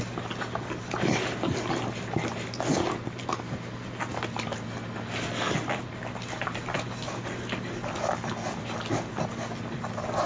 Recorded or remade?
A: recorded